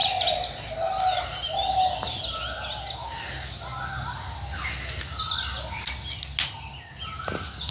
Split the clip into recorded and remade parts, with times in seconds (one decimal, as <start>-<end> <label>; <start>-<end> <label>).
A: 0.0-7.7 recorded